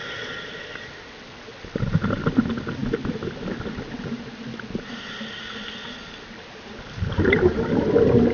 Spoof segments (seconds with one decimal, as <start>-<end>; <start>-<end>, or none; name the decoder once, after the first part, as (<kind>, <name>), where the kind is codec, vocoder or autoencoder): none